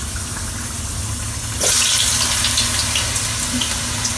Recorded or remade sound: recorded